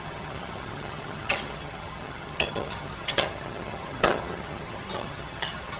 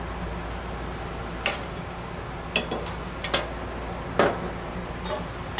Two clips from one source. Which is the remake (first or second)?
first